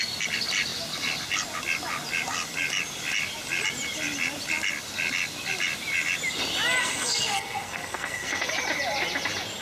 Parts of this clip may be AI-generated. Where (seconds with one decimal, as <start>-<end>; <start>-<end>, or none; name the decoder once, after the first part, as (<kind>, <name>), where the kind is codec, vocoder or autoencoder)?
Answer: 6.8-8.5 (codec, SNAC)